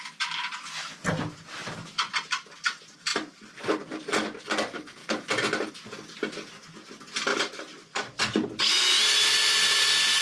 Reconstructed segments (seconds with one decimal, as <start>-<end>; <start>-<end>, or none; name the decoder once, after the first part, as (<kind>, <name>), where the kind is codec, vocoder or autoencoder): none